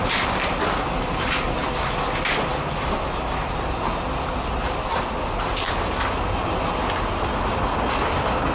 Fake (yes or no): no